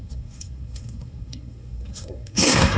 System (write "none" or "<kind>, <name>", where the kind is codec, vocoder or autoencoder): codec, SNAC